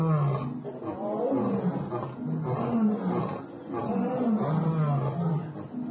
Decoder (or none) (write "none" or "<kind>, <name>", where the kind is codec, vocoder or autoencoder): none